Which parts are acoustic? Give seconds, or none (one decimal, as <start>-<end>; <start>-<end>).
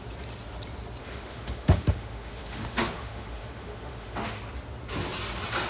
0.0-1.0; 4.4-5.7